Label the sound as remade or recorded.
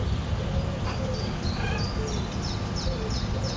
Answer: recorded